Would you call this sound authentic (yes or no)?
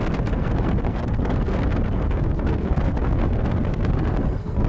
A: no